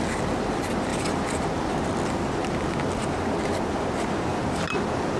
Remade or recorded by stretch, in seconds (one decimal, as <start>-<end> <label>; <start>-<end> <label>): 0.0-0.9 recorded; 0.9-1.7 remade; 1.7-5.2 recorded